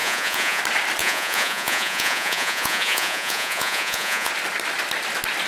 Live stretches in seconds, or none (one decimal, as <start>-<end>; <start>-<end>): 0.6-1.0; 4.3-5.5